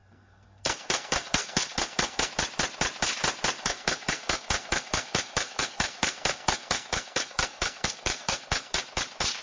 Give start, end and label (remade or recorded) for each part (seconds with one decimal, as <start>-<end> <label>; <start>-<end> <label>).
0.0-2.3 remade; 2.3-3.6 recorded; 3.6-8.8 remade; 8.8-9.4 recorded